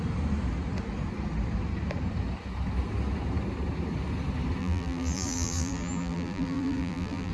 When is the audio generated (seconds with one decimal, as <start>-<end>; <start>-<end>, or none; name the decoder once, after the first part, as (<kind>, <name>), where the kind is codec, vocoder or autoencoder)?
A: 4.6-7.3 (vocoder, BigVGAN v2)

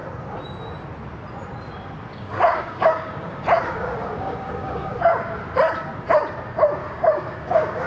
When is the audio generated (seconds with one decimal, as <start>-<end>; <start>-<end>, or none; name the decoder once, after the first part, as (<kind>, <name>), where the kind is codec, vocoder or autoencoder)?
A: 2.1-5.4 (codec, DAC); 6.8-7.9

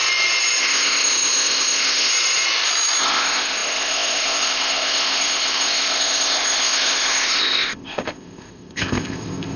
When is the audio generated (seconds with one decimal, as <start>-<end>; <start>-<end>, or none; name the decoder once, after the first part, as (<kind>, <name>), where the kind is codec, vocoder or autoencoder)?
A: 0.6-2.1 (codec, ZipCodec); 3.0-9.6

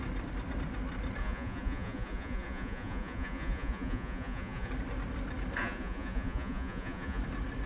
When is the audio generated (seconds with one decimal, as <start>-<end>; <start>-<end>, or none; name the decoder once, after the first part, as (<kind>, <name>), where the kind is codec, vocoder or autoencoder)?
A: 1.2-4.7 (vocoder, Vocos); 5.6-7.2

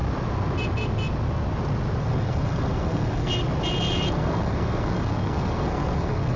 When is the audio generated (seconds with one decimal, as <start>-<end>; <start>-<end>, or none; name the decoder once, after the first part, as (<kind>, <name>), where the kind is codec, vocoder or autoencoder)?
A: 2.0-3.3 (codec, SNAC); 4.1-6.4